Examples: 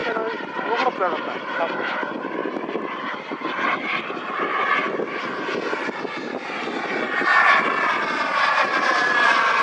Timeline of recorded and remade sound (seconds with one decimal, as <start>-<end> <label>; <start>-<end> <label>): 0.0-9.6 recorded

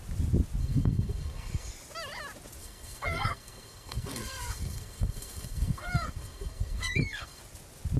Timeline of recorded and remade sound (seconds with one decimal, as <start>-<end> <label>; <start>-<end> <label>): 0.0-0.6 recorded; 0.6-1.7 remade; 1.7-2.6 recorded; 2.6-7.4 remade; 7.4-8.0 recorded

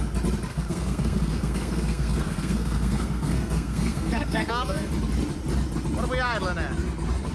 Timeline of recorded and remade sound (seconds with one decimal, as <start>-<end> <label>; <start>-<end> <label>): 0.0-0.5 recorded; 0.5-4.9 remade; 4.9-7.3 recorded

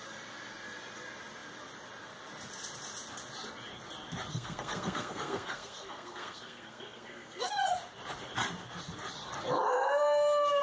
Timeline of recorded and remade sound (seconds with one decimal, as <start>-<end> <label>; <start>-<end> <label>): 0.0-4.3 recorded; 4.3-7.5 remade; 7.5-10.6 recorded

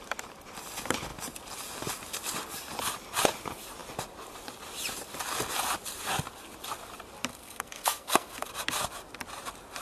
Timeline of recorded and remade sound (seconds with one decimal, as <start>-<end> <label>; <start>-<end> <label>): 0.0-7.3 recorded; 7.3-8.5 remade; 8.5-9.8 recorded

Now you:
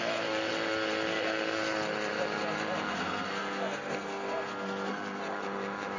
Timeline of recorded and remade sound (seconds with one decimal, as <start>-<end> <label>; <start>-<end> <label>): 0.0-2.9 recorded; 2.9-5.2 remade; 5.2-6.0 recorded

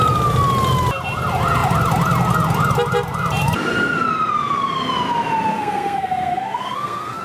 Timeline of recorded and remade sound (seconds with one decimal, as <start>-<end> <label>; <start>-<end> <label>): 0.0-5.5 recorded; 5.5-7.2 remade

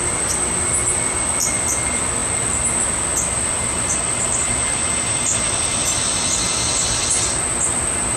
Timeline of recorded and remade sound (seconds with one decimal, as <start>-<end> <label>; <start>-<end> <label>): 0.0-8.2 recorded